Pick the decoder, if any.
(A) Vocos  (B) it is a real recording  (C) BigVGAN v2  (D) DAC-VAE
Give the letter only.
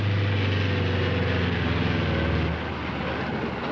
B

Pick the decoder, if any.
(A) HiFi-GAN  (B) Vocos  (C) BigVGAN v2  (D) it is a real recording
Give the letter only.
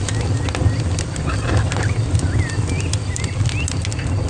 D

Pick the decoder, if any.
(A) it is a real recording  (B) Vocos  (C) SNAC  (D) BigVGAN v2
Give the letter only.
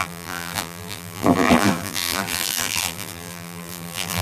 D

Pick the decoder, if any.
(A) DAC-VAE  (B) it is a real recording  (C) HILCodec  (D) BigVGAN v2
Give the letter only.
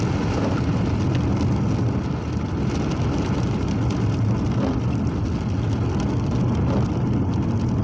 B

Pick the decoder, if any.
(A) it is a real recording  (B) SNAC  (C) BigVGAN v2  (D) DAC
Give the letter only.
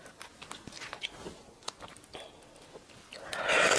A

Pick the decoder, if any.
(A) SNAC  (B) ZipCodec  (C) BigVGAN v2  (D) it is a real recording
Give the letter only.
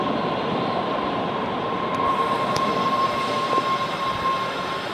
C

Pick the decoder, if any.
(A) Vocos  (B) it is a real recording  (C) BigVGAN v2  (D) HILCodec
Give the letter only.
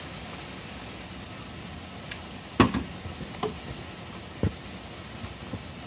B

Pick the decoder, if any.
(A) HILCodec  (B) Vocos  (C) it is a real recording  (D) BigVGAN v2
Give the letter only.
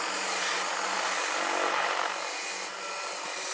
C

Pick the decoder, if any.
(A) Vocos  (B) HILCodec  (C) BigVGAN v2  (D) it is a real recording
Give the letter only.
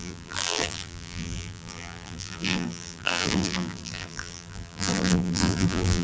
C